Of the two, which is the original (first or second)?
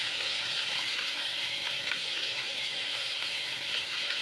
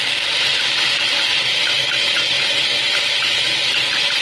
second